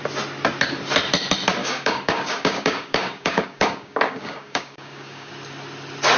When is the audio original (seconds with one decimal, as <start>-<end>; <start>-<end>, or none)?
0.0-1.6; 5.3-6.2